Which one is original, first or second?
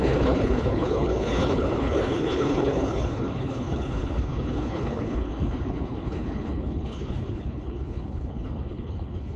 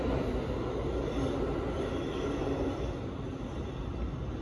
second